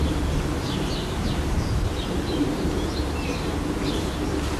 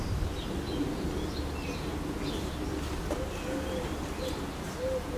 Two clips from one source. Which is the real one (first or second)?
second